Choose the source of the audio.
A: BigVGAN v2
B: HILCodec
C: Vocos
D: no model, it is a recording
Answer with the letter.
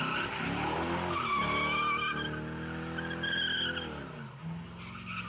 D